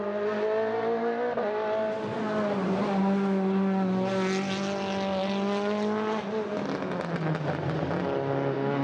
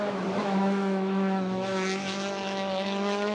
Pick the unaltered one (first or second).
first